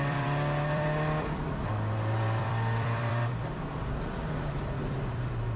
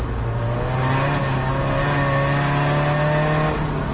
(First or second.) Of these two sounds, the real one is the second